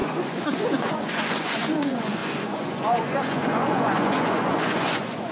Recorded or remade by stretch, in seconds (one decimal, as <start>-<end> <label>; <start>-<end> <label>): 0.0-5.3 remade